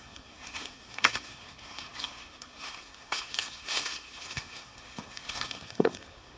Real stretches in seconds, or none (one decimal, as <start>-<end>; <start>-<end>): none